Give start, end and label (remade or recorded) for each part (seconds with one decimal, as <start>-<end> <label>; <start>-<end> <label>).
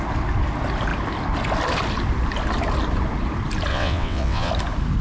0.0-3.7 recorded; 3.7-4.5 remade; 4.5-5.0 recorded